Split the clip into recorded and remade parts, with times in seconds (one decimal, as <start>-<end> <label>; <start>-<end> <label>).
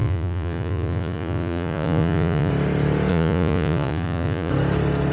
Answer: 0.0-2.5 remade; 2.5-3.1 recorded; 3.1-4.5 remade; 4.5-5.1 recorded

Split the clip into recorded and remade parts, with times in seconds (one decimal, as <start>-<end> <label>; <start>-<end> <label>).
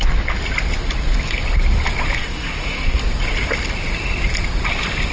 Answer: 0.0-2.2 recorded; 2.2-3.0 remade; 3.0-5.1 recorded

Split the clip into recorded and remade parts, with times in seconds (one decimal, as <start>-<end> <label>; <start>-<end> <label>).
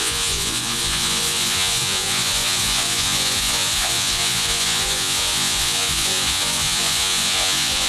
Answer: 0.0-7.9 remade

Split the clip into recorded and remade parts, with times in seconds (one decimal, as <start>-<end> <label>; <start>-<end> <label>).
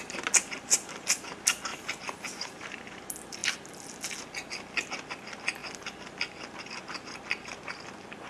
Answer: 0.0-1.7 recorded; 1.7-2.8 remade; 2.8-8.3 recorded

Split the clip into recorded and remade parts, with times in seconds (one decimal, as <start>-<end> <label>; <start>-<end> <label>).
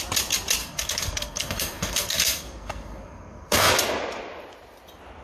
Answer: 0.0-0.6 recorded; 0.6-3.7 remade; 3.7-5.2 recorded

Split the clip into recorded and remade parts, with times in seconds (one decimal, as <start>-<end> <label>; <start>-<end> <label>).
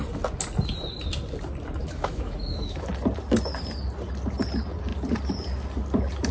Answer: 0.0-1.8 recorded; 1.8-2.9 remade; 2.9-6.3 recorded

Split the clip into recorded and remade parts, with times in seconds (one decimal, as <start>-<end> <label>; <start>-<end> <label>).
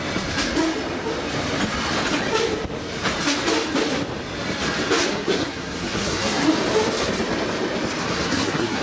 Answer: 0.0-5.1 recorded; 5.1-6.5 remade; 6.5-8.0 recorded; 8.0-8.8 remade